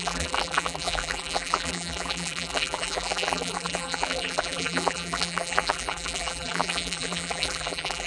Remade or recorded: remade